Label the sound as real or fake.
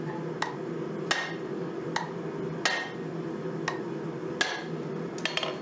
real